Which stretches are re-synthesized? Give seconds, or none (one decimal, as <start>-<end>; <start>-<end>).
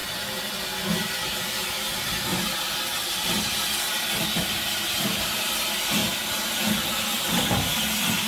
none